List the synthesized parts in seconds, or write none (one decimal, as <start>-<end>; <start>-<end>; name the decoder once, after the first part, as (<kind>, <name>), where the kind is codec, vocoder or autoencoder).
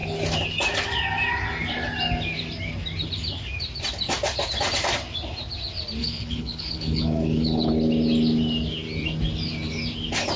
6.0-7.7 (codec, HILCodec)